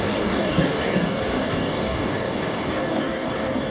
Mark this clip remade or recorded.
remade